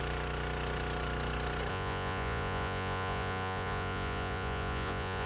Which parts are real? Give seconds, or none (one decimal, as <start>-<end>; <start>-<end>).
0.0-1.7